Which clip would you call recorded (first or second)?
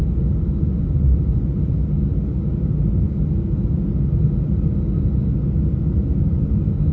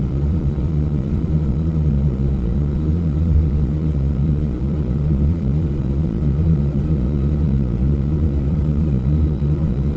first